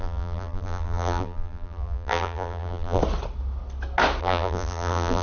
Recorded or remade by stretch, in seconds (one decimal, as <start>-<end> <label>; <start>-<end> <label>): 0.0-3.0 remade; 3.0-4.2 recorded; 4.2-5.2 remade